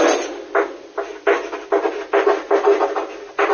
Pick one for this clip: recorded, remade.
recorded